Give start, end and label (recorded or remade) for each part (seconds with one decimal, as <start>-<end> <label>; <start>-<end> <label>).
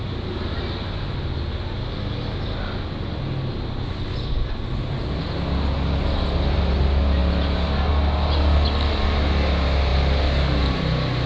0.0-11.3 recorded